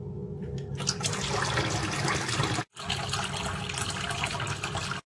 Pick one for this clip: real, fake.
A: real